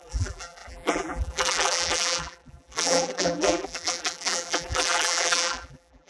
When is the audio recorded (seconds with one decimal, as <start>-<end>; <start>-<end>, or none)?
none